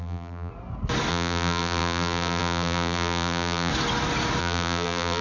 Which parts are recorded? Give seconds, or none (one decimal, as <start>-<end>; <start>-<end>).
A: 0.5-1.1; 3.7-4.4